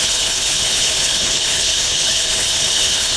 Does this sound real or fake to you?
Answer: fake